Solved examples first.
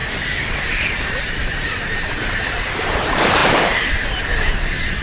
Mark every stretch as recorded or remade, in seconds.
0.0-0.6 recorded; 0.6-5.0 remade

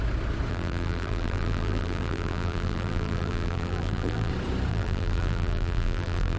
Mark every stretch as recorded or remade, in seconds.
0.0-0.5 recorded; 0.5-4.3 remade; 4.3-4.7 recorded; 4.7-6.4 remade